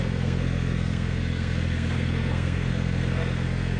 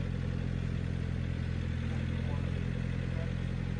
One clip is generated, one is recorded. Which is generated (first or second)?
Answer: first